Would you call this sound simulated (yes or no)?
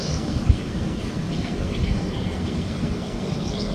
yes